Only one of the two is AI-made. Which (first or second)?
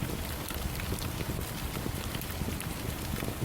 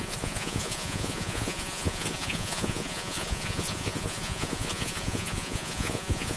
second